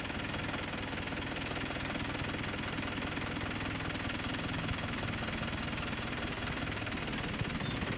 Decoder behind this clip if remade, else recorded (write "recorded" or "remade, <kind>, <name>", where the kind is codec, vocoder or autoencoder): recorded